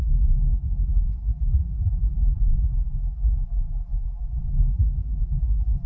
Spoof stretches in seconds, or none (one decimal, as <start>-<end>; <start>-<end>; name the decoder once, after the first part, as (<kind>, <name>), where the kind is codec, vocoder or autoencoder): 0.0-5.9 (vocoder, BigVGAN v2)